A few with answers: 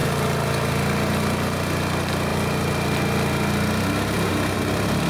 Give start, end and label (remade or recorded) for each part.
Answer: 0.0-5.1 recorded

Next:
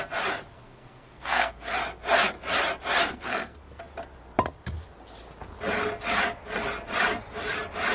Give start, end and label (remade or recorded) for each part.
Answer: 0.0-0.5 recorded; 0.5-1.7 remade; 1.7-3.1 recorded; 3.1-3.8 remade; 3.8-7.9 recorded

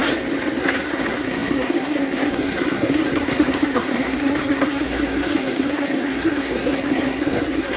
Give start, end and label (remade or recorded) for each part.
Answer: 0.0-0.6 recorded; 0.6-7.8 remade

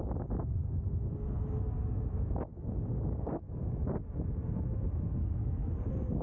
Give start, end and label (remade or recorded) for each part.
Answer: 0.0-5.1 recorded; 5.1-5.7 remade; 5.7-6.2 recorded

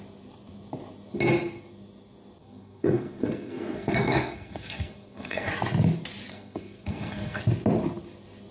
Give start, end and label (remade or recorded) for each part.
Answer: 0.0-2.4 recorded; 2.4-5.5 remade; 5.5-6.3 recorded; 6.3-7.4 remade; 7.4-8.5 recorded

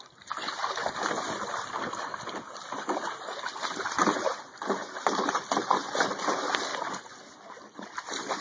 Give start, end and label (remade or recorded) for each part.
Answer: 0.0-8.4 recorded